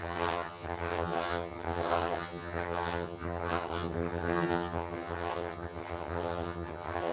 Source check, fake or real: fake